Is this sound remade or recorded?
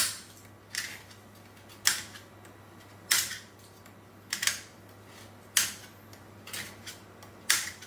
recorded